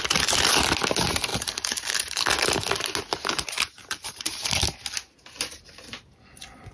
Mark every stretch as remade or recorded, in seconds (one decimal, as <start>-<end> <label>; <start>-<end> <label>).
0.0-1.3 recorded; 1.3-2.2 remade; 2.2-3.8 recorded; 3.8-4.5 remade; 4.5-6.7 recorded